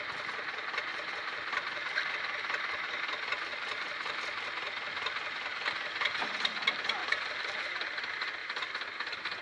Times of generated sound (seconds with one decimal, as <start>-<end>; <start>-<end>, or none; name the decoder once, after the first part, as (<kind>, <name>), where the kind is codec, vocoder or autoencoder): 0.9-2.1 (vocoder, BigVGAN v2); 3.5-4.1; 7.0-7.6